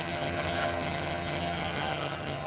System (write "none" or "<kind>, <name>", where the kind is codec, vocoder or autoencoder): vocoder, HiFi-GAN